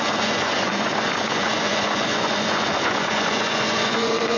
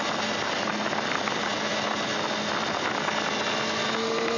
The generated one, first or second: first